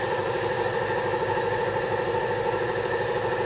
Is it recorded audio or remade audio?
recorded